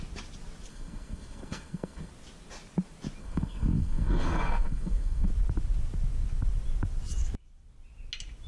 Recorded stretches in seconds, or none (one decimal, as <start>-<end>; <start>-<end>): 0.0-0.7; 2.1-3.2; 5.3-8.5